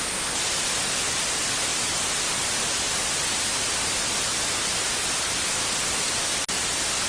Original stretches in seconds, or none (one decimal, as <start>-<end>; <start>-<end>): 0.0-1.7; 2.3-7.1